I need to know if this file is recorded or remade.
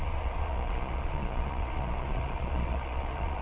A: remade